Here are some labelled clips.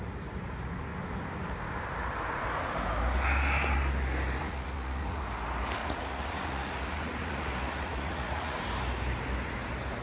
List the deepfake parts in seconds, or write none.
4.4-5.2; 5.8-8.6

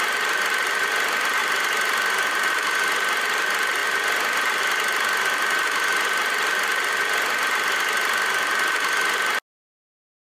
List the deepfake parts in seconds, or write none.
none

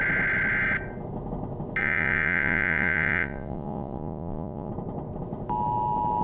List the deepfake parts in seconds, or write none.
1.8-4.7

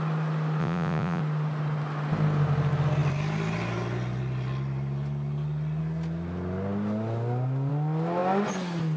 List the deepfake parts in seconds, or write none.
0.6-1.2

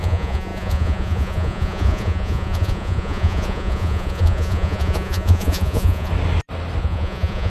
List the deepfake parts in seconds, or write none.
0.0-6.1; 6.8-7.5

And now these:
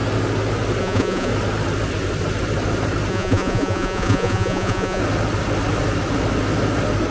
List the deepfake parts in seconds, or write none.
0.8-1.3; 3.1-5.0

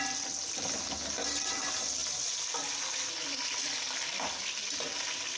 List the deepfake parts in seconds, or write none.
none